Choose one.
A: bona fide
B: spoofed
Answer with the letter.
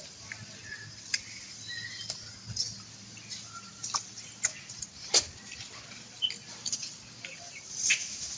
A